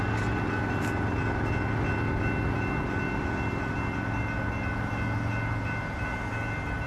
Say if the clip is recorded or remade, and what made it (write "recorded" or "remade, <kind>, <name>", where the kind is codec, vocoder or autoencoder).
recorded